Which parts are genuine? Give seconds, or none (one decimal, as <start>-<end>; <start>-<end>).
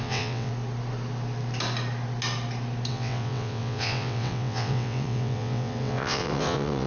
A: 0.5-2.9